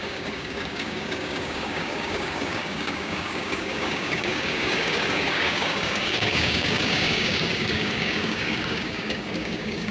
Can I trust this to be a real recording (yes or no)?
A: no